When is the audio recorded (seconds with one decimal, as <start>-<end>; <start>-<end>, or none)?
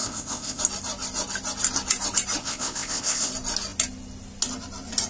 0.6-2.4; 3.3-5.1